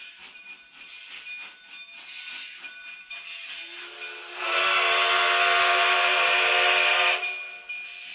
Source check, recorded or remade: recorded